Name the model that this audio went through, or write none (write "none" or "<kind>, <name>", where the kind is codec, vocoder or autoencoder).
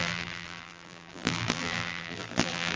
vocoder, BigVGAN v2